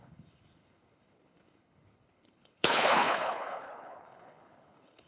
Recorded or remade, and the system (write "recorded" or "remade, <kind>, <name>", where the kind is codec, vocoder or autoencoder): remade, codec, HILCodec